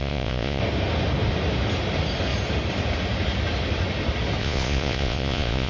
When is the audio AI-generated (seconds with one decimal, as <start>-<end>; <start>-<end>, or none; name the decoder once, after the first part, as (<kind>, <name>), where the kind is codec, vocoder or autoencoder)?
0.0-0.6 (vocoder, Vocos); 4.4-5.7